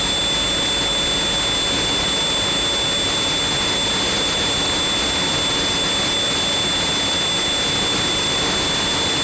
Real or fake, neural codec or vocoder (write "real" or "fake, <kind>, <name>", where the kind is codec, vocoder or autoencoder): real